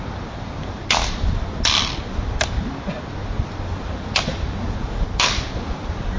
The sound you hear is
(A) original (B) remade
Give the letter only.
A